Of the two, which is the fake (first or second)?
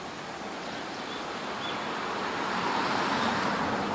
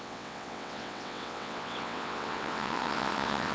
second